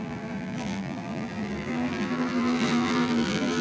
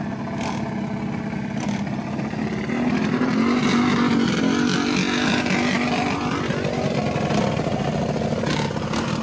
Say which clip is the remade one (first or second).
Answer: first